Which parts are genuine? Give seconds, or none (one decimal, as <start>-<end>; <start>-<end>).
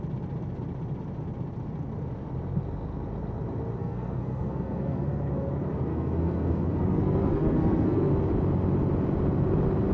0.0-3.8; 5.5-5.9; 8.1-9.9